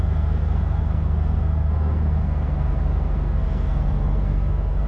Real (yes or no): no